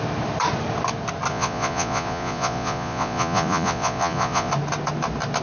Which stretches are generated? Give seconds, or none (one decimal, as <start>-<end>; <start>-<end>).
1.3-4.5